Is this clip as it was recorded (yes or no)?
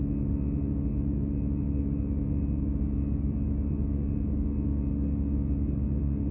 yes